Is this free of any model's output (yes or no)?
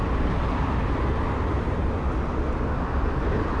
yes